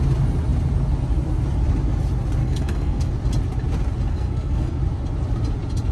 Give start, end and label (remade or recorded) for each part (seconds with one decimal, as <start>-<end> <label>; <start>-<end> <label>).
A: 0.0-2.4 recorded; 2.4-3.1 remade; 3.1-4.1 recorded; 4.1-4.8 remade; 4.8-5.9 recorded